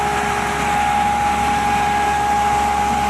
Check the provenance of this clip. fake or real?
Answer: real